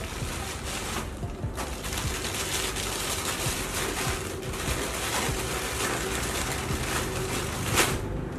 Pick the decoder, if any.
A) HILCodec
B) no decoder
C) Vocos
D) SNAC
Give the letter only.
B